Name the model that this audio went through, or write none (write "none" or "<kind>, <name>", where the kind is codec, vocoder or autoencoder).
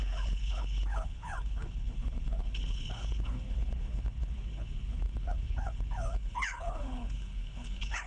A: codec, HILCodec